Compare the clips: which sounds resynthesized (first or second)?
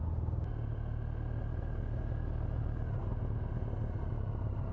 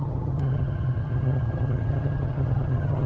second